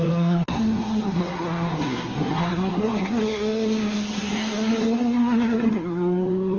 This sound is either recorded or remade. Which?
remade